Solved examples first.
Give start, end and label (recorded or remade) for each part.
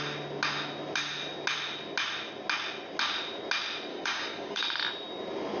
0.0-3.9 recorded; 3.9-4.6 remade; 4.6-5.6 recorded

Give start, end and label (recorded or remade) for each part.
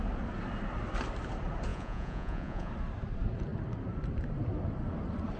0.0-1.7 recorded; 1.7-2.7 remade; 2.7-5.4 recorded